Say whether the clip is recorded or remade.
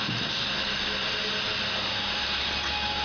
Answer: recorded